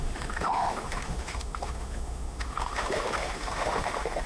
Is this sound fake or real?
fake